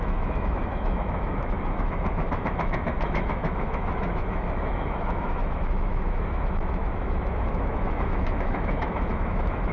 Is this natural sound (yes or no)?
no